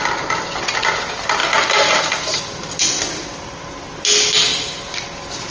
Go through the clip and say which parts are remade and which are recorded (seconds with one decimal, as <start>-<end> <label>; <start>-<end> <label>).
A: 0.0-5.5 recorded